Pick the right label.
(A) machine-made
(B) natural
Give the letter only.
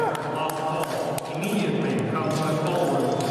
B